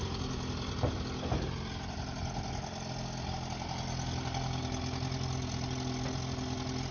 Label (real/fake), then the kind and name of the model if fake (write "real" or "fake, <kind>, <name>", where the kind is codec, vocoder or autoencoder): real